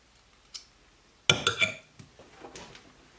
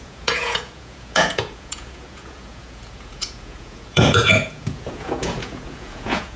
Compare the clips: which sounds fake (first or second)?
second